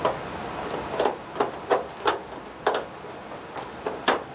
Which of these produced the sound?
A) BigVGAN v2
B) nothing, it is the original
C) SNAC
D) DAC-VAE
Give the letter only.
B